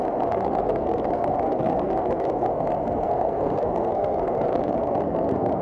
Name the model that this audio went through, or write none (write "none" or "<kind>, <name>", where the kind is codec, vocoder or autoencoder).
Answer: codec, SNAC